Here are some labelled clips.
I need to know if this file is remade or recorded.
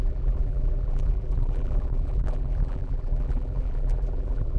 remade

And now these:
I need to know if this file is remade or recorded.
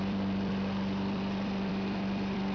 remade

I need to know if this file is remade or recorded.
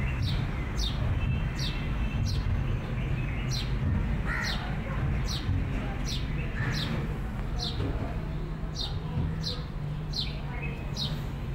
recorded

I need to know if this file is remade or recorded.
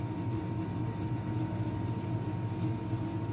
recorded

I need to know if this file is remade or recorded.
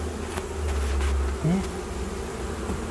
recorded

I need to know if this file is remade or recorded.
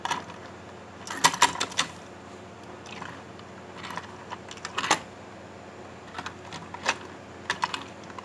recorded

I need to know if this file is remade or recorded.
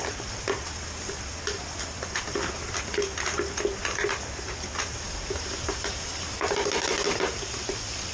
recorded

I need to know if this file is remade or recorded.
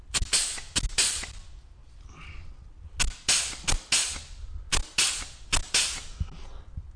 recorded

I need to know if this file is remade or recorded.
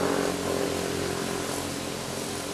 recorded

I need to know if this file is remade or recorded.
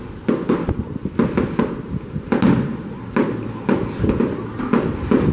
recorded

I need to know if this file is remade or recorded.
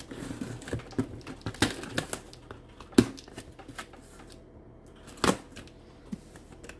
recorded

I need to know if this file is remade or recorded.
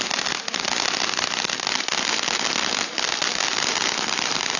recorded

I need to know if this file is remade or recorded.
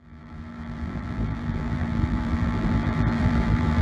remade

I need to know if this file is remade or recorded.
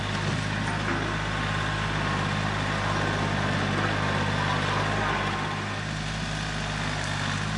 recorded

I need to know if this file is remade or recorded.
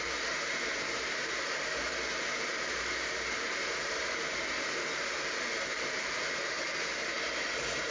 remade